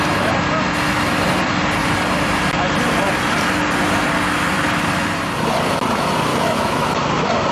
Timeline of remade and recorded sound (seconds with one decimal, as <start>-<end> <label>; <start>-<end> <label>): 0.0-6.3 recorded; 6.3-7.0 remade; 7.0-7.5 recorded